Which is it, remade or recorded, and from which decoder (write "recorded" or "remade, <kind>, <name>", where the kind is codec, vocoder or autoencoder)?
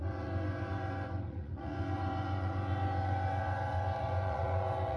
remade, vocoder, Vocos